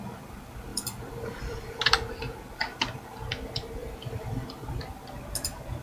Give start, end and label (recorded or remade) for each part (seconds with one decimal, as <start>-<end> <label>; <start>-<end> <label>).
0.0-0.7 recorded; 0.7-1.8 remade; 1.8-3.8 recorded; 3.8-4.9 remade; 4.9-5.8 recorded